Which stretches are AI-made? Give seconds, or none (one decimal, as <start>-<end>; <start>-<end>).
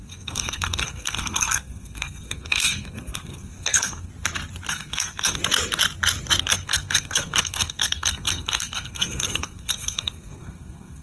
0.0-4.1; 4.7-5.4; 6.4-11.0